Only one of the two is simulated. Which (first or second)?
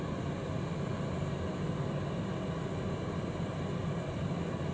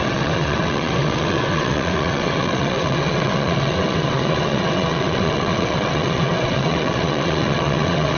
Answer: second